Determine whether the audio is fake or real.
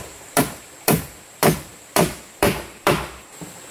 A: fake